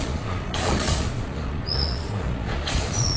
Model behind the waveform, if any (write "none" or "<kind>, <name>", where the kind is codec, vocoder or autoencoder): vocoder, Vocos